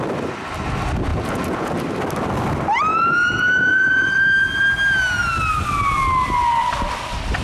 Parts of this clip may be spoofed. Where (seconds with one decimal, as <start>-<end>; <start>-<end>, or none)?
1.1-1.7; 2.9-4.6